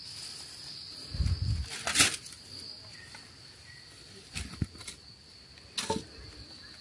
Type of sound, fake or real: real